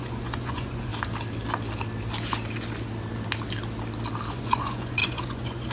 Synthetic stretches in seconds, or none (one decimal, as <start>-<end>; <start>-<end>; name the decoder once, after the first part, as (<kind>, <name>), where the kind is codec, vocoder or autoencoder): 0.0-0.9 (vocoder, Vocos); 4.3-5.7